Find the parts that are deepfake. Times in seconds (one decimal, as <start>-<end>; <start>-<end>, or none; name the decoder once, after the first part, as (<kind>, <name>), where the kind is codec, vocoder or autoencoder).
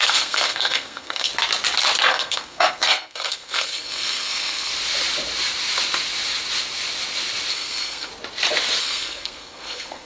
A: 0.0-1.3 (codec, SNAC); 2.1-4.7; 7.5-8.1; 8.8-10.1